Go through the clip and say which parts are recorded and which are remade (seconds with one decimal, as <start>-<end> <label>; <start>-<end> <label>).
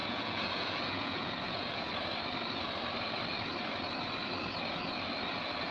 0.0-1.9 remade; 1.9-5.7 recorded